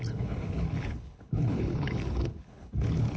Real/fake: fake